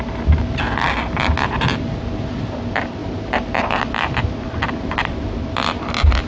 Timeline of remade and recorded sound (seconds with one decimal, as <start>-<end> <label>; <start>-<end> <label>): 0.0-3.0 recorded; 3.0-4.0 remade; 4.0-6.3 recorded